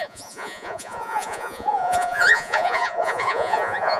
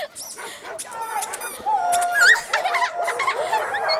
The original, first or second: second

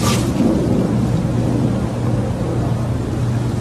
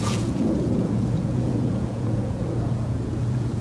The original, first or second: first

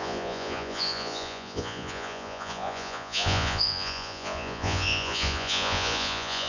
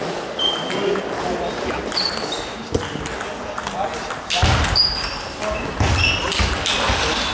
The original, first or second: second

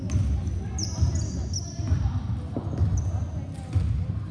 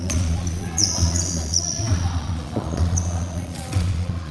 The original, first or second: first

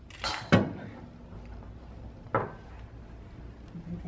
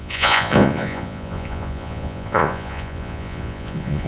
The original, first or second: first